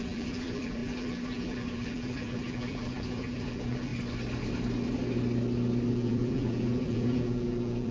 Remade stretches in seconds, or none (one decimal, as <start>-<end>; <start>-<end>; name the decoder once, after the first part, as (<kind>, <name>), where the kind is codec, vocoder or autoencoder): 0.0-3.9 (vocoder, BigVGAN v2); 5.9-7.9

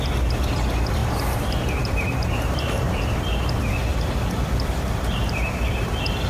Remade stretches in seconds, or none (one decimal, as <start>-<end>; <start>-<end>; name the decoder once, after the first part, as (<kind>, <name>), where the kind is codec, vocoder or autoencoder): 1.0-3.5 (vocoder, BigVGAN v2); 3.9-6.3

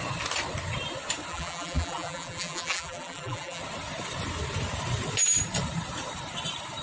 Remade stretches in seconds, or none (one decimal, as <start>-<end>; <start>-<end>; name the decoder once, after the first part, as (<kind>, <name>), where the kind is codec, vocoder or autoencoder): 1.3-3.6 (vocoder, BigVGAN v2)

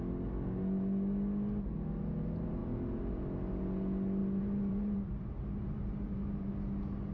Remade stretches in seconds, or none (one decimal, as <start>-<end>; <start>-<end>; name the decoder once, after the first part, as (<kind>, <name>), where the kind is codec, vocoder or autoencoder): 4.2-6.5 (vocoder, BigVGAN v2)

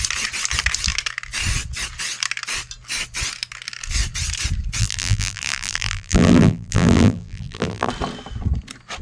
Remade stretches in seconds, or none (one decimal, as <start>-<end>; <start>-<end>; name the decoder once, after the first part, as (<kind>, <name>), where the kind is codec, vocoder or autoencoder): 4.8-7.9 (vocoder, BigVGAN v2)

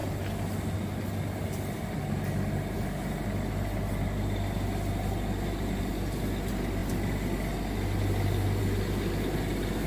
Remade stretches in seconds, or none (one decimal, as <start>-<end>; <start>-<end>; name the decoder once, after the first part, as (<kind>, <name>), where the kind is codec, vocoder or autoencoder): none

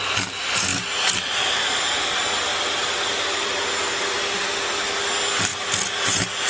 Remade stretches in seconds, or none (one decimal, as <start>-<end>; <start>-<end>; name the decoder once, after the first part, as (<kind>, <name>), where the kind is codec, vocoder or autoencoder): 2.5-4.6 (vocoder, BigVGAN v2)

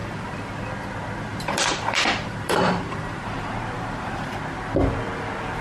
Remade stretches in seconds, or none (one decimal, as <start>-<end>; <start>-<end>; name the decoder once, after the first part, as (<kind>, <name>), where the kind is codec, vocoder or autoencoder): 0.0-0.6 (vocoder, BigVGAN v2); 1.3-4.4